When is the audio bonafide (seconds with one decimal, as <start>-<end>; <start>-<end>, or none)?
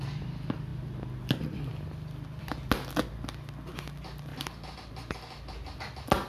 0.0-6.3